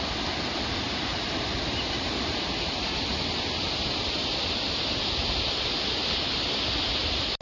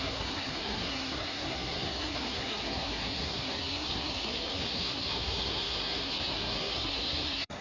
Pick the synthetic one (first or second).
second